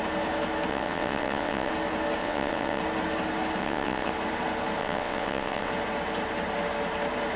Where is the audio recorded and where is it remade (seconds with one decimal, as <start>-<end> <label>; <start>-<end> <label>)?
0.0-0.7 recorded; 0.7-1.7 remade; 1.7-2.2 recorded; 2.2-2.8 remade; 2.8-3.6 recorded; 3.6-4.1 remade; 4.1-4.8 recorded; 4.8-5.7 remade; 5.7-7.4 recorded